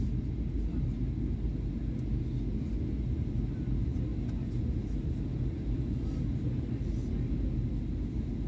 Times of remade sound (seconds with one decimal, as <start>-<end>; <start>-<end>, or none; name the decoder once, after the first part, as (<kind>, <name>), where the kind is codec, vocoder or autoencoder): none